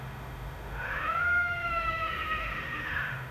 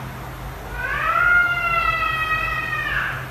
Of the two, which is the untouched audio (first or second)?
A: second